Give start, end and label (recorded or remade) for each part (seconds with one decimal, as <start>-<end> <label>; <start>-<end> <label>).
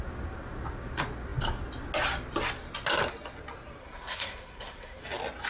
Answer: 0.0-3.8 recorded; 3.8-5.0 remade; 5.0-5.5 recorded